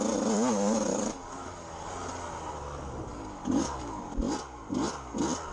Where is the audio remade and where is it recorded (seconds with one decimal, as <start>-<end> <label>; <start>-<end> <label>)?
0.0-0.9 recorded; 0.9-1.9 remade; 1.9-3.1 recorded; 3.1-4.0 remade; 4.0-5.5 recorded